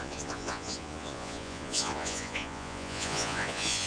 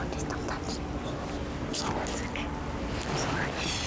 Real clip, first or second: second